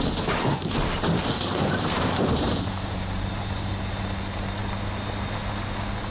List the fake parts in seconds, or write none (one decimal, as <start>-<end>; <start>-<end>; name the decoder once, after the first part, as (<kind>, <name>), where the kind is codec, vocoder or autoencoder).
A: 1.5-3.7 (vocoder, BigVGAN v2)